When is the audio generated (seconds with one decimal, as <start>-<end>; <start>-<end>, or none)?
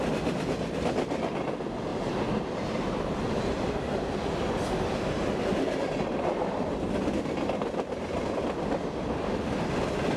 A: 1.9-3.4